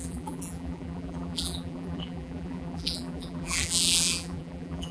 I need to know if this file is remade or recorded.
remade